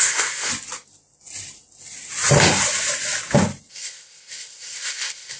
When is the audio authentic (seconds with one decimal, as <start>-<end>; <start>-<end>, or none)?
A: 0.5-3.7